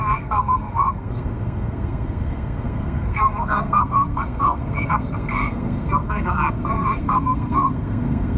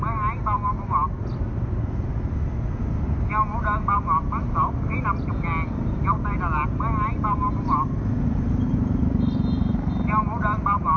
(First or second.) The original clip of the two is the second